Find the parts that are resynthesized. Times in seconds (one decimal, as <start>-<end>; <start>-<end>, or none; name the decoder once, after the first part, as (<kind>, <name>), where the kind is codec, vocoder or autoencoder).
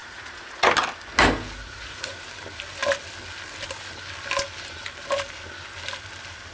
0.0-0.7 (vocoder, Vocos); 1.6-2.3